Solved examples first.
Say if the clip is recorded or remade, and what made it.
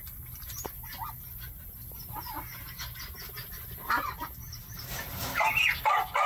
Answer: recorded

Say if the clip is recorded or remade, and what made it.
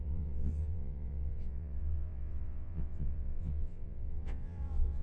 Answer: remade, vocoder, WaveNeXt